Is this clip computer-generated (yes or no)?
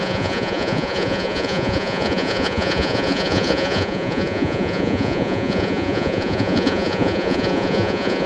yes